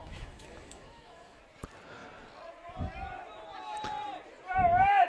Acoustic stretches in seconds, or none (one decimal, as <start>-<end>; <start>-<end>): 1.4-5.1

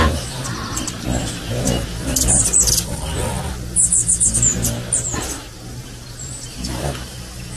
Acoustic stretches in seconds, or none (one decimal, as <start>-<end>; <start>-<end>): 0.4-1.2; 2.1-3.8; 4.6-6.5

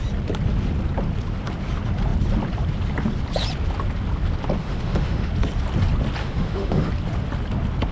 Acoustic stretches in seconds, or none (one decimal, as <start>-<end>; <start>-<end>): 0.0-4.6; 5.3-6.2; 6.9-7.9

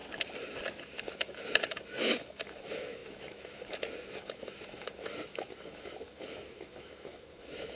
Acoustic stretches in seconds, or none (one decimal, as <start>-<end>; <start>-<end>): 0.0-0.8